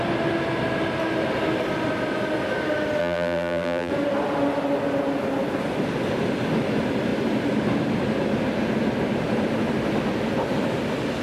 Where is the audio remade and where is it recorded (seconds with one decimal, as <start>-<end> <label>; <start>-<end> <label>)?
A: 0.0-3.0 recorded; 3.0-3.9 remade; 3.9-11.2 recorded